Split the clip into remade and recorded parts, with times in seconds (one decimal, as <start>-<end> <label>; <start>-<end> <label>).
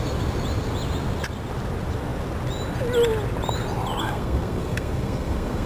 0.0-4.0 recorded; 4.0-5.7 remade